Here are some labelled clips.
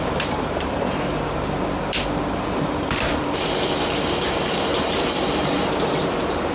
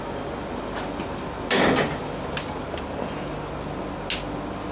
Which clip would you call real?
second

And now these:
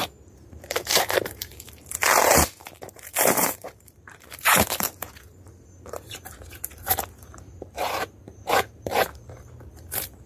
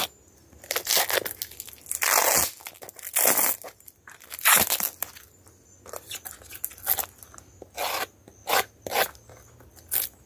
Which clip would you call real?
second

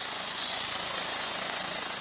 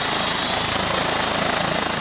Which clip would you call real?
second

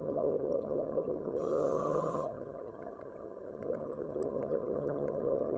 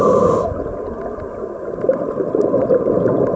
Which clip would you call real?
second